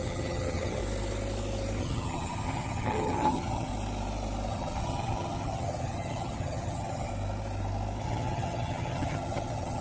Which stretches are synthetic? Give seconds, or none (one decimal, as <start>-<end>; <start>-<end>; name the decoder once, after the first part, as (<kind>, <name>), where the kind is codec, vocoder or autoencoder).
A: 0.0-0.8 (vocoder, HiFi-GAN); 1.8-3.7; 4.5-7.1; 8.0-9.8